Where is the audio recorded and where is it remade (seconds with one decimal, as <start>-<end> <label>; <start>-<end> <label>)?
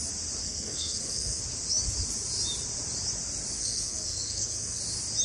0.0-0.4 recorded; 0.4-1.4 remade; 1.4-3.6 recorded; 3.6-4.8 remade; 4.8-5.2 recorded